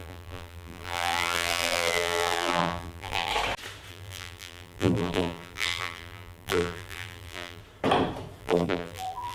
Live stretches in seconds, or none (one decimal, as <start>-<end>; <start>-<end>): 3.3-3.9; 7.6-8.4

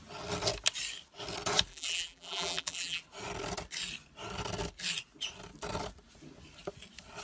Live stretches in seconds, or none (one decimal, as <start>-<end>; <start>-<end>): 0.0-1.7; 3.0-7.2

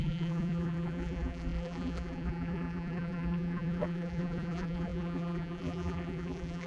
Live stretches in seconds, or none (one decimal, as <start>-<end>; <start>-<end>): none

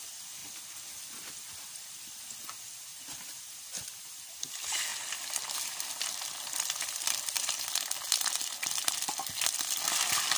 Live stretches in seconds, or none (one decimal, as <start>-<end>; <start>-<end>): 0.0-10.4

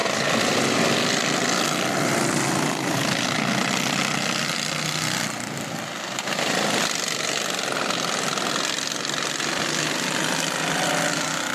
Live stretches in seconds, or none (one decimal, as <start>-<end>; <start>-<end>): 0.0-11.5

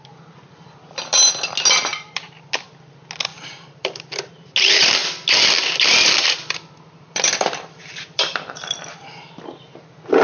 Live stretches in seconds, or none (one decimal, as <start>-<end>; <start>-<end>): 0.0-1.9; 2.5-3.3; 4.3-5.0; 9.3-10.2

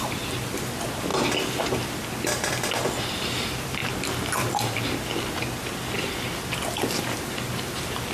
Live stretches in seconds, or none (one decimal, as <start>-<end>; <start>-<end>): 1.1-3.0; 3.8-6.8

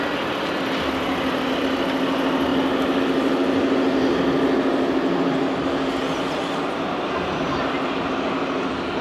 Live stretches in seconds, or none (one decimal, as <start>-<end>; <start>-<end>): 0.0-9.0